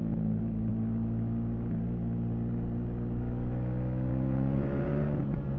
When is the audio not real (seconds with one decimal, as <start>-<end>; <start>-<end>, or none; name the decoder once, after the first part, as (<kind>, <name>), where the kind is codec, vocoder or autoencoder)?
0.0-0.7 (vocoder, Vocos); 4.1-5.6